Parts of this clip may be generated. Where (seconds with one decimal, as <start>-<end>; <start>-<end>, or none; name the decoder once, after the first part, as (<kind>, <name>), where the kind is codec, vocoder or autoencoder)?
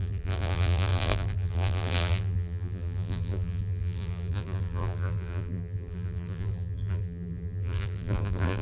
0.0-8.6 (vocoder, BigVGAN v2)